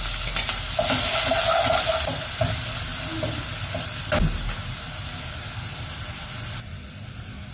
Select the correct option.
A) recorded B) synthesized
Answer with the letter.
A